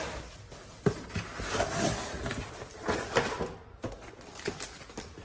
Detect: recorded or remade recorded